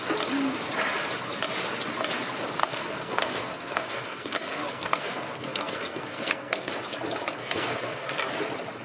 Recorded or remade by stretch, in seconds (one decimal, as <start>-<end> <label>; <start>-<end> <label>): 0.0-2.6 recorded; 2.6-6.7 remade; 6.7-7.4 recorded; 7.4-8.2 remade; 8.2-8.8 recorded